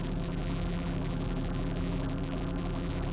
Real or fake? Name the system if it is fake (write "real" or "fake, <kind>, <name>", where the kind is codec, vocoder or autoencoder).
fake, vocoder, BigVGAN v2